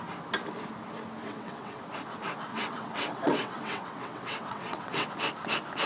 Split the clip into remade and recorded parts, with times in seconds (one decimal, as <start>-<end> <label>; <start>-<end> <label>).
0.0-1.2 recorded; 1.2-1.8 remade; 1.8-2.5 recorded; 2.5-5.1 remade; 5.1-5.9 recorded

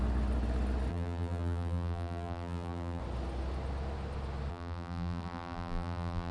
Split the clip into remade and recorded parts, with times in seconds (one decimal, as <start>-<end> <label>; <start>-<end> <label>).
0.0-0.9 recorded; 0.9-3.0 remade; 3.0-4.5 recorded; 4.5-6.3 remade

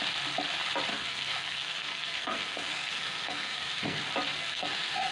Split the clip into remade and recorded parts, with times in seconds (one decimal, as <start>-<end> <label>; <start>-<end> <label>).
0.0-0.9 recorded; 0.9-4.0 remade; 4.0-4.4 recorded; 4.4-5.1 remade

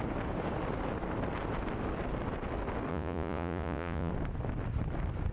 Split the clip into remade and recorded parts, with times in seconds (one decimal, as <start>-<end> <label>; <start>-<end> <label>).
0.0-2.9 recorded; 2.9-4.1 remade; 4.1-5.3 recorded